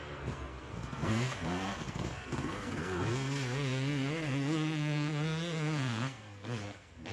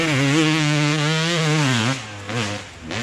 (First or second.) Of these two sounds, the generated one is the first